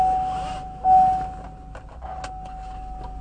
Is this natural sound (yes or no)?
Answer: yes